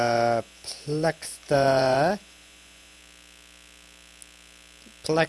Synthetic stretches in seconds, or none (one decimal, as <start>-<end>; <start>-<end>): 0.0-3.0